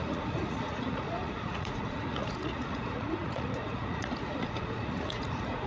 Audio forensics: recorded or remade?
remade